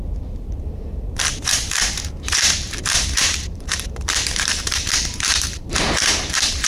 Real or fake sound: fake